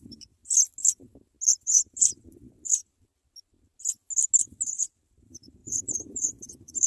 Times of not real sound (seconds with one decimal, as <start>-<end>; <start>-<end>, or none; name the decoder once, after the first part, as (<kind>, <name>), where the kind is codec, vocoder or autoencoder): 0.0-0.4 (vocoder, BigVGAN v2); 1.5-2.8; 4.4-6.9